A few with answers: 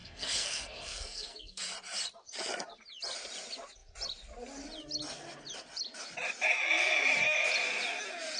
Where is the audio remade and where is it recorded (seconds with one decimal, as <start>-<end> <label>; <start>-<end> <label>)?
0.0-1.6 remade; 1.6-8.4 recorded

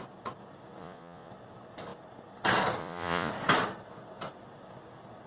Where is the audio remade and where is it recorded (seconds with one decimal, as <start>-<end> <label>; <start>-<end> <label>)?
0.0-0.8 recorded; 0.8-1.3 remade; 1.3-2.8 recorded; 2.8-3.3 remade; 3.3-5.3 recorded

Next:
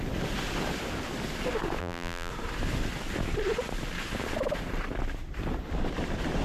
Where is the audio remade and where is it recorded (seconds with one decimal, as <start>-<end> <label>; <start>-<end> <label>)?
0.0-1.8 recorded; 1.8-2.3 remade; 2.3-6.4 recorded

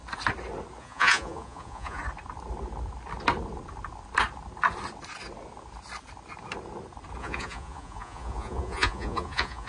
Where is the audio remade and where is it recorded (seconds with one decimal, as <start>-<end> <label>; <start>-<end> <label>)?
0.0-0.8 recorded; 0.8-2.0 remade; 2.0-7.2 recorded; 7.2-9.7 remade